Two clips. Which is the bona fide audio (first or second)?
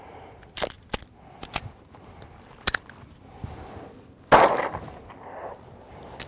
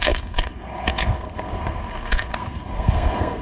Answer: first